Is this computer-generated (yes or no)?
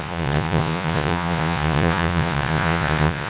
yes